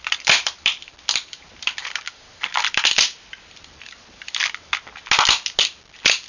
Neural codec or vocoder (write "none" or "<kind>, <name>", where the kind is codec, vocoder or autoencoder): none